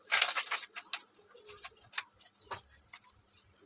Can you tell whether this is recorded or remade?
recorded